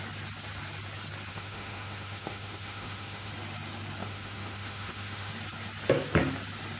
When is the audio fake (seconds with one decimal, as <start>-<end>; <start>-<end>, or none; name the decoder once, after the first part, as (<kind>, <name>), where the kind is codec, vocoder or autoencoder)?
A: 1.3-3.3 (autoencoder, DAC-VAE); 4.0-5.3